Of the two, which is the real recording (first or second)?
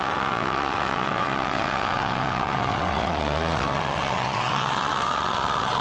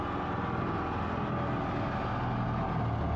second